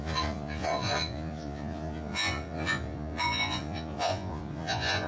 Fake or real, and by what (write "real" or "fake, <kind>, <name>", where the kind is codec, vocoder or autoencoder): fake, vocoder, Vocos